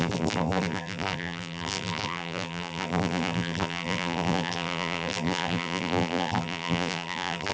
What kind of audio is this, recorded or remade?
remade